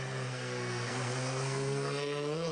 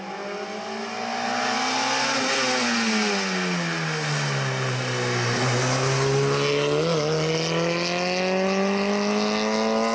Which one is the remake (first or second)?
first